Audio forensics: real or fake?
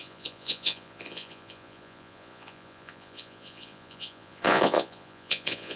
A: fake